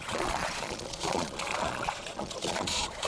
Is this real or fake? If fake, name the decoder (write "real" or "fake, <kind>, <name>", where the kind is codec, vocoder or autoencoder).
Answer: fake, vocoder, Vocos